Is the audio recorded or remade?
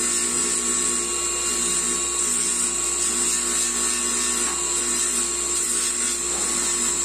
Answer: recorded